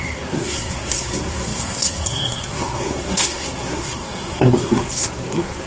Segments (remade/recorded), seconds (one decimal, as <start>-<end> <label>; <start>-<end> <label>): 0.0-5.7 remade